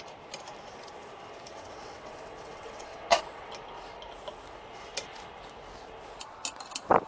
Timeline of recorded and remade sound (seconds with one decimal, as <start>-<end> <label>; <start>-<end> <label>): 0.0-1.5 recorded; 1.5-3.5 remade; 3.5-7.1 recorded